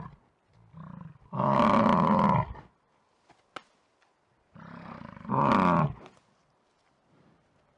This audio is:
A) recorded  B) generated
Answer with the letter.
A